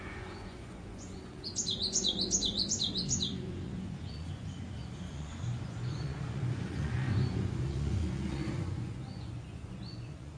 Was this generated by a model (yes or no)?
yes